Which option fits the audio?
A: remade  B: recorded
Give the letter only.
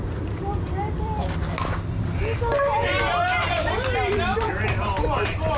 A